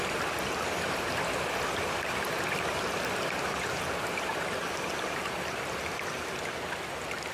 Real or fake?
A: real